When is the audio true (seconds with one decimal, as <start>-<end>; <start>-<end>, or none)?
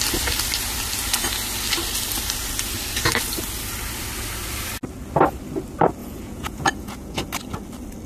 0.0-6.0; 7.2-8.1